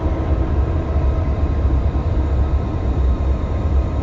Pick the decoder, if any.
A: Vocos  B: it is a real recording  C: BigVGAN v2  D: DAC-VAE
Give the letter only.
C